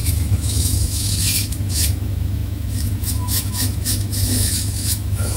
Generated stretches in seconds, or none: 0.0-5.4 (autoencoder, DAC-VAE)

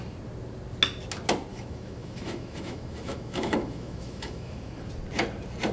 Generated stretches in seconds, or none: 1.5-4.9 (autoencoder, DAC-VAE)